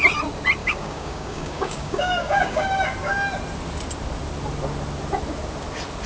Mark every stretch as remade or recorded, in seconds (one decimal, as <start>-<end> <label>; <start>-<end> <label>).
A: 0.0-0.6 recorded; 0.6-2.8 remade; 2.8-6.1 recorded